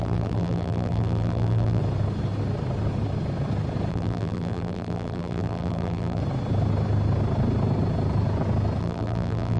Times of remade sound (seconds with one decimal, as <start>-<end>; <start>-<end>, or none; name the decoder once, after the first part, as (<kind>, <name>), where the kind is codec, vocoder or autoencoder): 0.0-1.8 (vocoder, BigVGAN v2); 3.9-6.2; 8.8-9.6